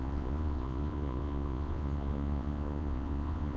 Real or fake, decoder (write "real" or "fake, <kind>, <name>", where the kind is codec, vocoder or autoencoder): fake, vocoder, Vocos